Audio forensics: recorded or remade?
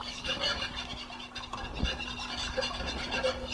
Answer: recorded